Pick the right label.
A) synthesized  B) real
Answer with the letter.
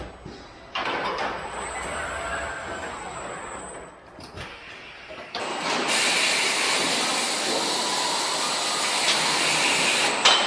B